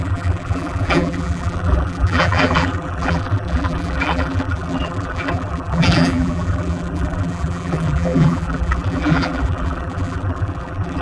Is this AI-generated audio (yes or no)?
yes